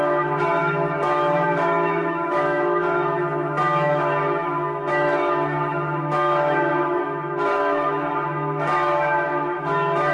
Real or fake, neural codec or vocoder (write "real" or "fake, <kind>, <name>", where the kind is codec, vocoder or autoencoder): fake, autoencoder, DAC-VAE